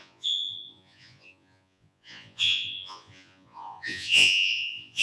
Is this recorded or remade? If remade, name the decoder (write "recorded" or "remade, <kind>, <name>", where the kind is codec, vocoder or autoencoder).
remade, vocoder, Vocos